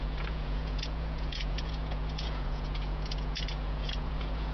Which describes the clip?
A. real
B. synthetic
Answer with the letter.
B